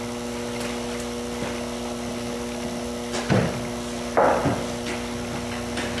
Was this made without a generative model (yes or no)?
yes